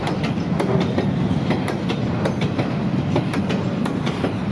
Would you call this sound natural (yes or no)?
yes